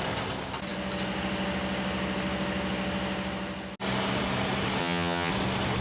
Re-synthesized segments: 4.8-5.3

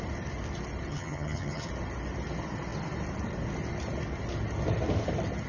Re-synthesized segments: 0.9-1.7